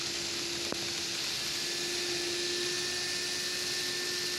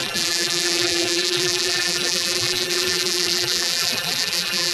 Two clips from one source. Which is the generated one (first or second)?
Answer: second